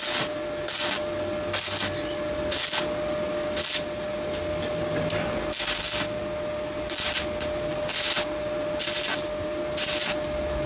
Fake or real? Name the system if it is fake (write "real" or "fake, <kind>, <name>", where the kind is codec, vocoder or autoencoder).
real